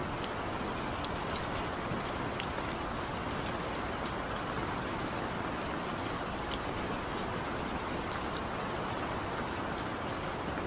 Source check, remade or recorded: recorded